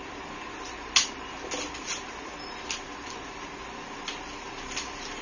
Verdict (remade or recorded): recorded